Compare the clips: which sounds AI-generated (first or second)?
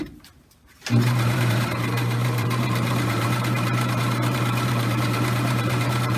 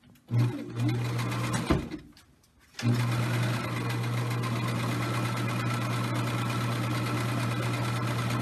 first